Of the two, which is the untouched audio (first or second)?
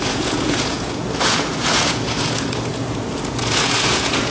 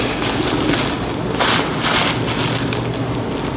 second